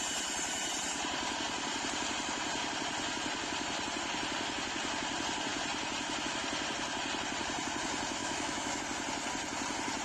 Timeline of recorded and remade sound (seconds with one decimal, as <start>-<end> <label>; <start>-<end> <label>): 0.0-8.2 recorded; 8.2-8.8 remade; 8.8-10.0 recorded